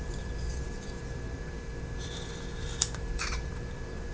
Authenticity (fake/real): fake